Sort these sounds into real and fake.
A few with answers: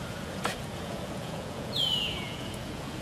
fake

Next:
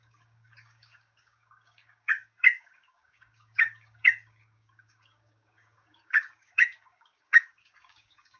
fake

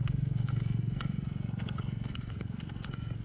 fake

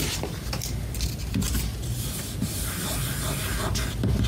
real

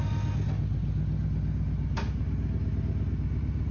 real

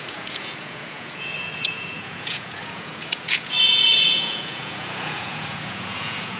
fake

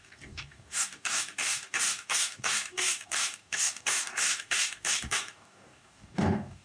fake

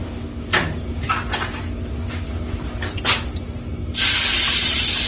real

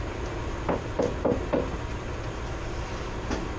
real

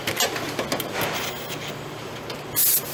real